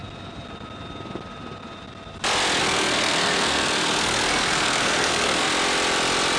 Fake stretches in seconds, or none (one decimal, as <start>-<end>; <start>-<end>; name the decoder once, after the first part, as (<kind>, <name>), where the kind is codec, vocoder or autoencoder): 2.6-5.5 (codec, SNAC)